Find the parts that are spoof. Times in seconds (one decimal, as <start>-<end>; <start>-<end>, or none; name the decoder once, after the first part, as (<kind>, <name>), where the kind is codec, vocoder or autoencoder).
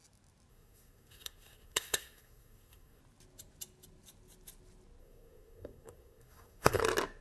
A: 0.5-3.0 (codec, SNAC); 5.0-6.8